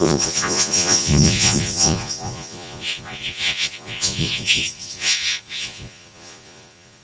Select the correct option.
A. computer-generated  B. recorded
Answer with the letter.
A